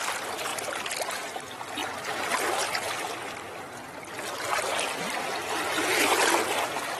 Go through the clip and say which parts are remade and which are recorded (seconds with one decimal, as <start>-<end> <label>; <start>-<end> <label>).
0.0-7.0 recorded